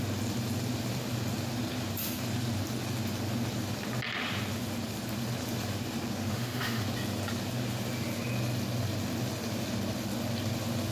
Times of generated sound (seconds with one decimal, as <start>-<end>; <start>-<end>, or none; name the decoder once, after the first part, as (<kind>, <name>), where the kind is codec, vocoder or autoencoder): 6.3-6.8 (autoencoder, DAC-VAE)